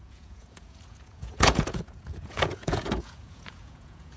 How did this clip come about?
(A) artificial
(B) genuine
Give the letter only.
A